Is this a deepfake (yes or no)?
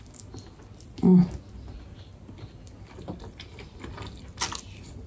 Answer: no